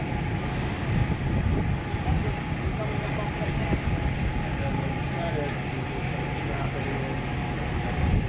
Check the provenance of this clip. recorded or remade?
recorded